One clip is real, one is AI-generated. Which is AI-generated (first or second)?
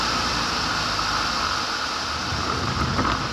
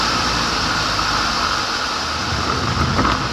first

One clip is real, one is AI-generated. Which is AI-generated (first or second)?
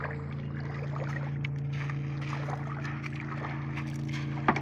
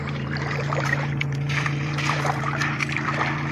second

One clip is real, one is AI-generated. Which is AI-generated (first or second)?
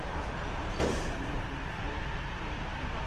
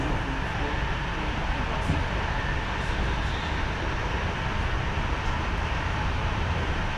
first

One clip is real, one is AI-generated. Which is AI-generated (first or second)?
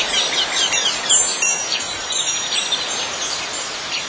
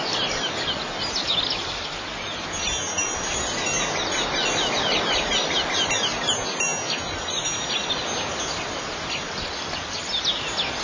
first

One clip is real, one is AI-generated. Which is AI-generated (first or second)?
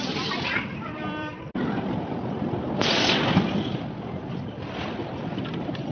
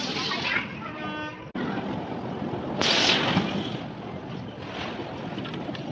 first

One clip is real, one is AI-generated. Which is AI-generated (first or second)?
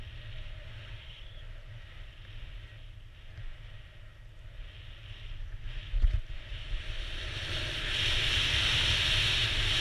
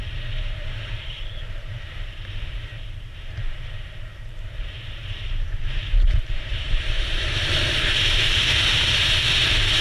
second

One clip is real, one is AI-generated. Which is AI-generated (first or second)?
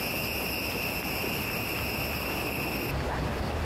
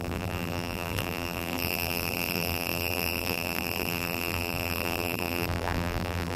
second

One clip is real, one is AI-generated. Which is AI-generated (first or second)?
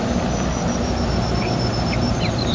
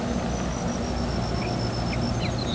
first